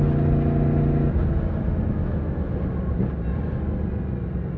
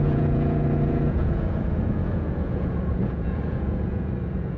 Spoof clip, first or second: second